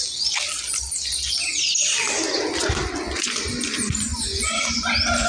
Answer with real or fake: real